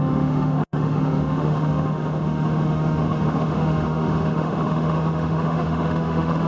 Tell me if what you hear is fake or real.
fake